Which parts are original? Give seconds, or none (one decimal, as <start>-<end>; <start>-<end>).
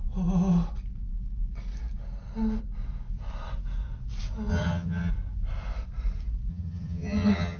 0.0-4.5; 5.1-6.5